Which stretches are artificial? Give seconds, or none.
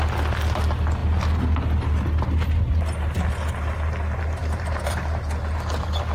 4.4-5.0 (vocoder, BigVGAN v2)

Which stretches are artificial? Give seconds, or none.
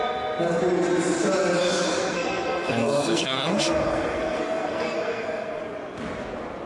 1.6-5.6 (codec, SNAC)